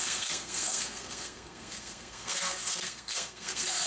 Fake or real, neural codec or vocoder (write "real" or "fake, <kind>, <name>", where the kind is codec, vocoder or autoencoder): fake, codec, SNAC